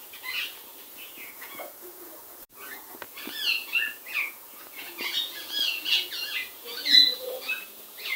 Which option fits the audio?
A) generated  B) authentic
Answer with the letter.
A